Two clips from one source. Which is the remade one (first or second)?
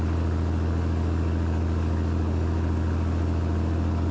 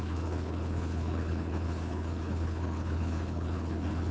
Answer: second